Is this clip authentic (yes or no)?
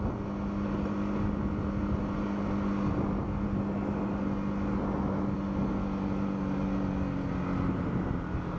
yes